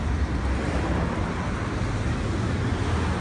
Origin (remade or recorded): recorded